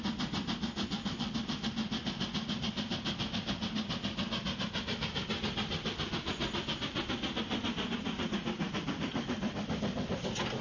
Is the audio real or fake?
real